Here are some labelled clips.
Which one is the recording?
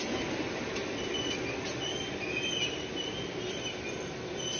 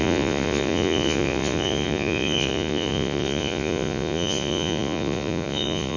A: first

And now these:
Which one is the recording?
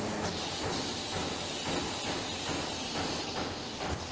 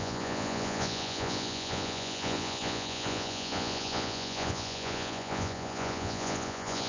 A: first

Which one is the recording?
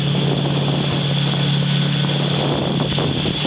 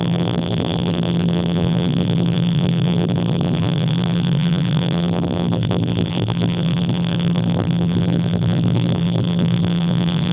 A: first